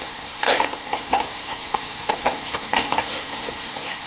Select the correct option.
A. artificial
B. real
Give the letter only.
A